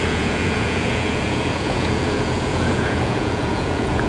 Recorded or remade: remade